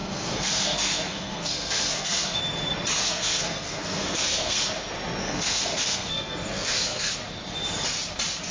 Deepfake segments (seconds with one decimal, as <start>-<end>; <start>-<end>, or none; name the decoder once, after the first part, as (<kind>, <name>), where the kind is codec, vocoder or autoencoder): 0.0-2.4 (codec, SNAC); 3.0-4.6; 5.2-7.1